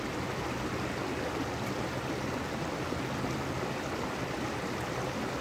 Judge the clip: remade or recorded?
recorded